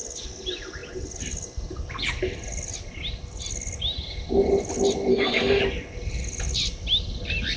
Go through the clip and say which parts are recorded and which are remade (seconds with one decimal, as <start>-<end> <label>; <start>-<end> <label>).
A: 0.0-5.1 recorded; 5.1-5.6 remade; 5.6-7.6 recorded